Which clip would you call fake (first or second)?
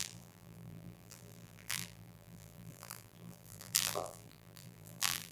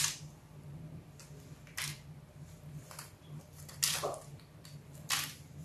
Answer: first